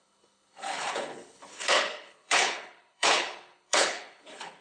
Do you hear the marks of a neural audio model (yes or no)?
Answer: yes